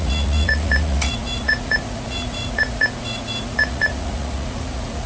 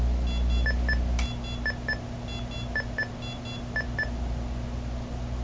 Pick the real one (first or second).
second